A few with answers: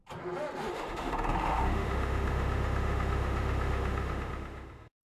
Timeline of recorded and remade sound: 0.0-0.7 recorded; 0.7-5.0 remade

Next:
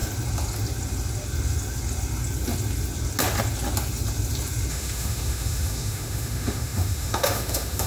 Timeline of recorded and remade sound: 0.0-4.7 recorded; 4.7-7.9 remade